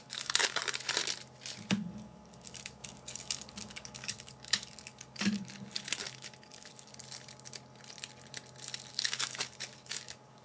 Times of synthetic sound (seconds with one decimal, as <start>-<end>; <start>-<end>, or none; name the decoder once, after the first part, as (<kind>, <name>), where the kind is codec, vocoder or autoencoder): 0.0-0.6 (codec, DAC); 1.7-6.9; 8.9-10.4